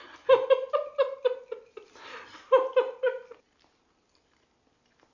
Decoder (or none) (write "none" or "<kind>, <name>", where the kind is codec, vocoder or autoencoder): none